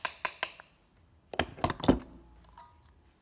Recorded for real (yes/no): yes